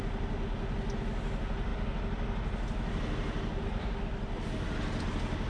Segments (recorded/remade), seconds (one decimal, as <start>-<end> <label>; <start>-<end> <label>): 0.0-5.5 recorded